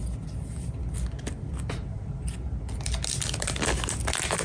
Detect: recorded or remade recorded